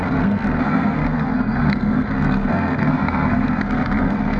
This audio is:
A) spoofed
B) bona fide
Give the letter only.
A